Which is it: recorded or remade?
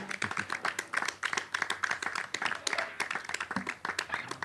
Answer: recorded